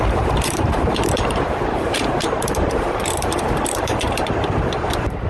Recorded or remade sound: remade